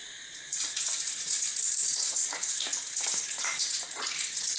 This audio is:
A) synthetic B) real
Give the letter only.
A